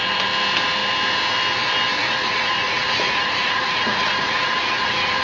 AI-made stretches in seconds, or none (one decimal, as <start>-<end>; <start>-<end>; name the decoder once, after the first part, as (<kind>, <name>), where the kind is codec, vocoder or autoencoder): 1.9-5.2 (vocoder, Vocos)